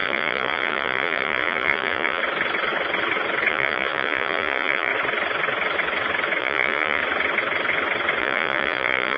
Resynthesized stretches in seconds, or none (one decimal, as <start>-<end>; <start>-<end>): 0.0-2.2; 3.5-4.9; 6.4-7.0; 8.2-9.2